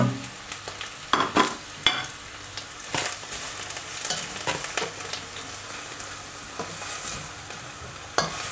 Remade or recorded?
recorded